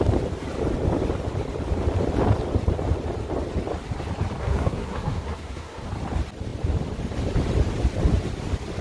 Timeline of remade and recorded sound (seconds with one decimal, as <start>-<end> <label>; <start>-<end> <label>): 0.0-4.4 recorded; 4.4-5.9 remade; 5.9-8.8 recorded